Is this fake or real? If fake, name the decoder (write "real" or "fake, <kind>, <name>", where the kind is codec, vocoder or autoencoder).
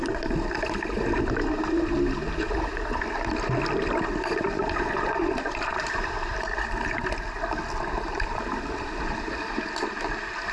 real